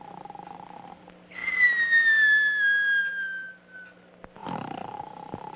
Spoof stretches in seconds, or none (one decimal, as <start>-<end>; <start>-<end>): none